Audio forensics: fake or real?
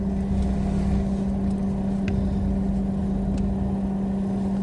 real